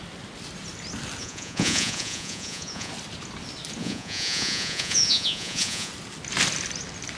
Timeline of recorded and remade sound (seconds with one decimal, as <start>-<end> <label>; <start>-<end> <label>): 0.0-1.2 recorded; 1.2-2.9 remade; 2.9-3.8 recorded; 3.8-5.9 remade; 5.9-7.2 recorded